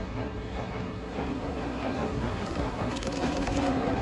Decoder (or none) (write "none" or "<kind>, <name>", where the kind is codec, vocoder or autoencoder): codec, SNAC